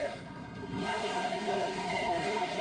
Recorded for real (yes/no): no